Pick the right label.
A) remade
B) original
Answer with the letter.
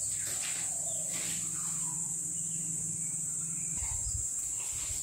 B